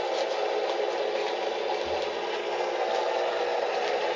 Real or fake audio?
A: real